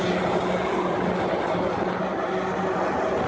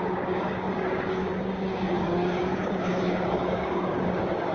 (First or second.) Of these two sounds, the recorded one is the first